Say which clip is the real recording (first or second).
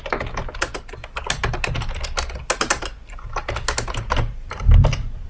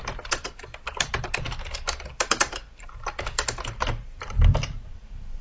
first